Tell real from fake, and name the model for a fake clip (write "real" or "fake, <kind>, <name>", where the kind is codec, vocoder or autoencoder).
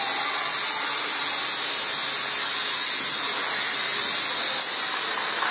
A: real